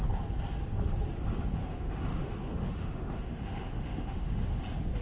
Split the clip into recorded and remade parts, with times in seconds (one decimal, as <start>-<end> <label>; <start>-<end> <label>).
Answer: 0.0-1.6 recorded; 1.6-4.6 remade; 4.6-5.0 recorded